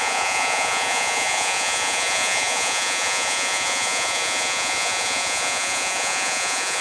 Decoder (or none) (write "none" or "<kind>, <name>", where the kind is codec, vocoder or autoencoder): vocoder, Vocos